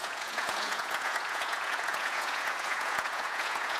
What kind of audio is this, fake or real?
fake